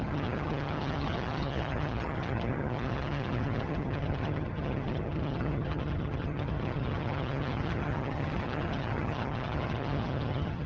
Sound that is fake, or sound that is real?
fake